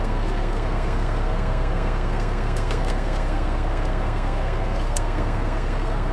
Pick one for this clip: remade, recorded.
remade